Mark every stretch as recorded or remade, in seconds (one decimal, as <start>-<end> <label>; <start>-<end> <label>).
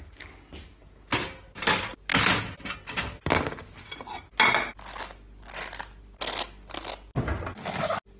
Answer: 0.0-8.2 recorded